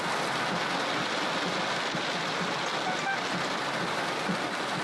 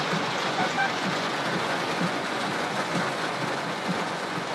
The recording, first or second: first